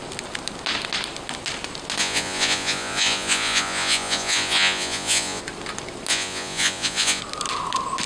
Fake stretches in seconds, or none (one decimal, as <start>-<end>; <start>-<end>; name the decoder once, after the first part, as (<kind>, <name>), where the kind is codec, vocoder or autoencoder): 2.0-5.4 (vocoder, Vocos); 6.1-7.2